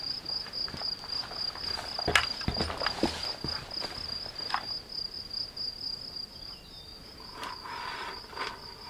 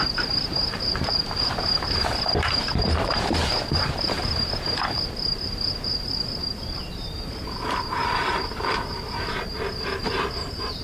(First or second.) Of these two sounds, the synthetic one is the second